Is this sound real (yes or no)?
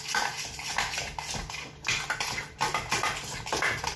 yes